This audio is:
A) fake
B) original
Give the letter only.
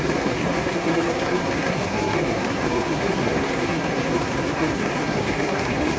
A